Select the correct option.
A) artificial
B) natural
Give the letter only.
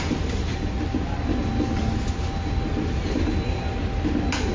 B